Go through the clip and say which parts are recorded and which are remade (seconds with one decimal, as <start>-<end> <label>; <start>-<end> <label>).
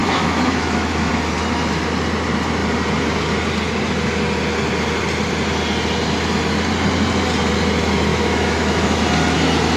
0.0-1.1 remade; 1.1-8.1 recorded; 8.1-9.0 remade; 9.0-9.8 recorded